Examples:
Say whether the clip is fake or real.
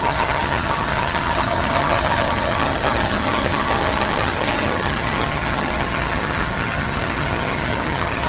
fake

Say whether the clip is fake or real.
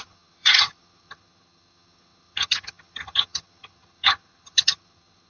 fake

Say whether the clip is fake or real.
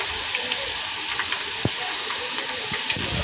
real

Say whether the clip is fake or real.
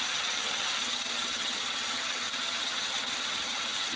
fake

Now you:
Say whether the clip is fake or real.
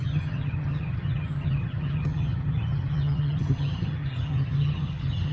fake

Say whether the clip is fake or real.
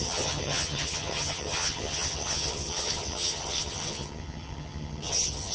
fake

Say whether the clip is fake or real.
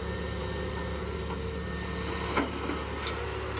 real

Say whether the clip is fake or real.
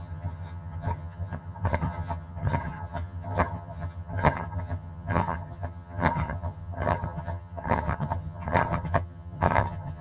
fake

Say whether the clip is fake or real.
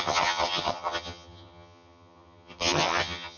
fake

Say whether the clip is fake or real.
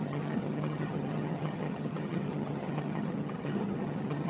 fake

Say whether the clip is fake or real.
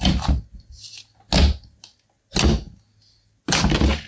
real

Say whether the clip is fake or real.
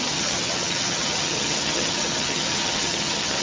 fake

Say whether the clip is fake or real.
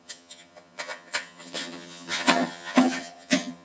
fake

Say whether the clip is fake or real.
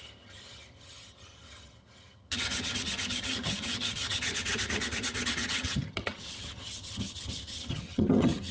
fake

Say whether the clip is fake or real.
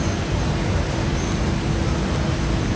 real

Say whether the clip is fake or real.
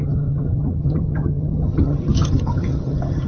fake